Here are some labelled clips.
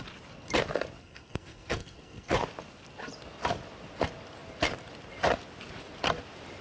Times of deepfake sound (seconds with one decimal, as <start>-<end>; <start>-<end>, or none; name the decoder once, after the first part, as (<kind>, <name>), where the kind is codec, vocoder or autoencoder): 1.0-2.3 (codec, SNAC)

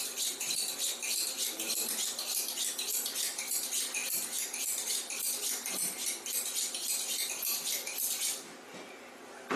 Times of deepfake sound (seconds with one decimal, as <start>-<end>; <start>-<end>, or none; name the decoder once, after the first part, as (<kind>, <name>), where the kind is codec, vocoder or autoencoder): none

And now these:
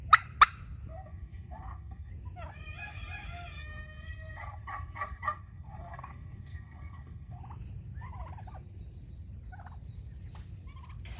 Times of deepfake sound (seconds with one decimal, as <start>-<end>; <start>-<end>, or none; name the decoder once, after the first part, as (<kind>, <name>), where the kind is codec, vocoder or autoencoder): 0.9-2.1 (codec, SNAC); 3.6-7.4